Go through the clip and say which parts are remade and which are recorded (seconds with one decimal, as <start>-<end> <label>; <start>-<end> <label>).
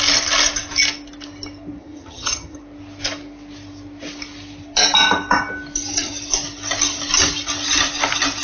0.0-1.8 recorded; 1.8-2.6 remade; 2.6-8.4 recorded